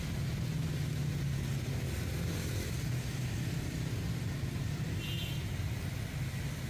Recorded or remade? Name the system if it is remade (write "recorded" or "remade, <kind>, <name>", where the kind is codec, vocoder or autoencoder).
recorded